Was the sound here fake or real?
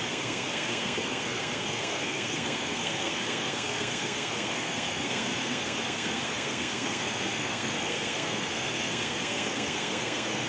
fake